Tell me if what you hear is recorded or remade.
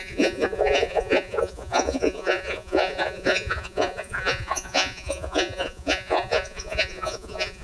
remade